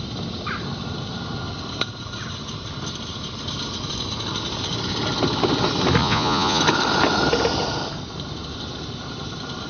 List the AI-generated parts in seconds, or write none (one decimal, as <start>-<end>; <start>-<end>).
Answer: 6.0-6.6